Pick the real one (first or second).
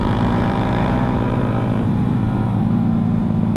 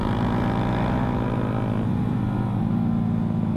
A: second